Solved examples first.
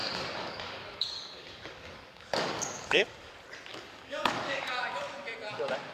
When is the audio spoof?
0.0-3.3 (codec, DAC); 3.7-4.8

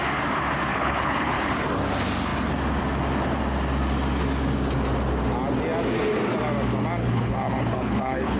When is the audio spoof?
0.7-1.5 (codec, HILCodec); 7.0-8.4

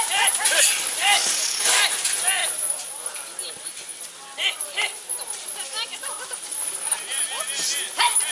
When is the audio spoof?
1.0-1.8 (codec, DAC)

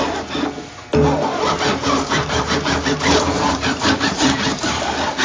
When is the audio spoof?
1.7-4.8 (vocoder, BigVGAN v2)